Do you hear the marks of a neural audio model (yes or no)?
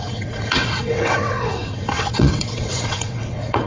yes